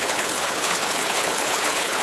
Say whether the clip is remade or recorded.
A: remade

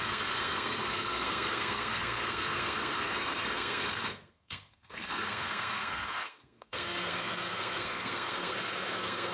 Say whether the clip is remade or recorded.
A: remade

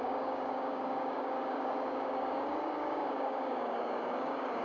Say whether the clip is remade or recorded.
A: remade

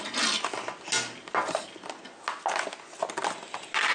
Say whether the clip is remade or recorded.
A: recorded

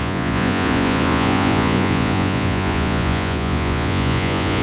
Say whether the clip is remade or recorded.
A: remade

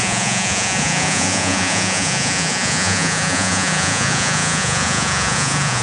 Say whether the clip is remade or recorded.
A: remade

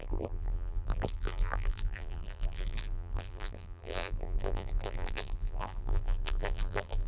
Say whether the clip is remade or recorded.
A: remade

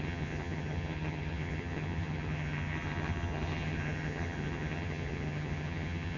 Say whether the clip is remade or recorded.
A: remade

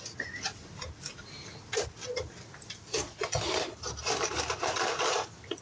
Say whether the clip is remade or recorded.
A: recorded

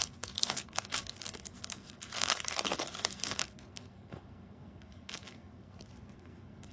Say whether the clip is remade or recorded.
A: remade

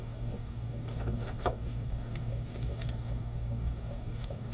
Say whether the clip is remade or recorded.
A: remade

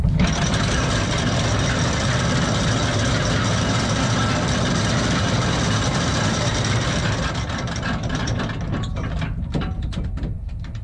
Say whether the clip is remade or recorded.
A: recorded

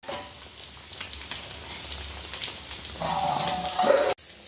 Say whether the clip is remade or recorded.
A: recorded